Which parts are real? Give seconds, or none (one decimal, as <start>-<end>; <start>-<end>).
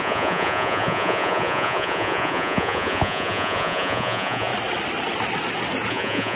4.5-5.9